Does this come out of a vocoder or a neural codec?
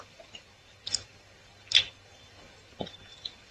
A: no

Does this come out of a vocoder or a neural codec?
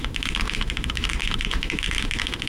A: yes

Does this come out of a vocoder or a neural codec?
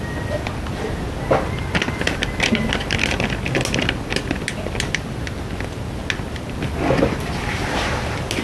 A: no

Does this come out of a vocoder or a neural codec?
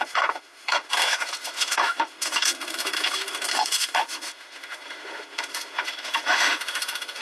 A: yes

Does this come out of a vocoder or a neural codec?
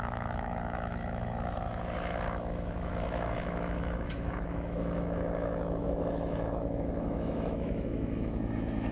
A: yes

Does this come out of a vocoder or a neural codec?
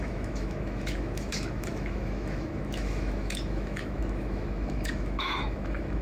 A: yes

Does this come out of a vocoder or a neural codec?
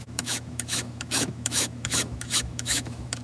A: yes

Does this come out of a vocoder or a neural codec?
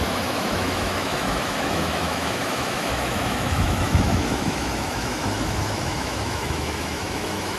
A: yes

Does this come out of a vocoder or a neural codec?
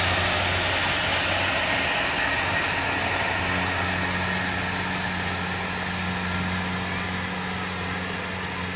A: no